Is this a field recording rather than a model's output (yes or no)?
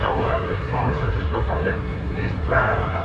no